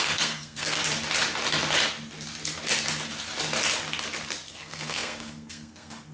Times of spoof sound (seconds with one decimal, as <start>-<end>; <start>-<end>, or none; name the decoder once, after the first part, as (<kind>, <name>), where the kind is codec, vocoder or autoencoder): 0.0-0.8 (codec, SNAC); 4.5-6.1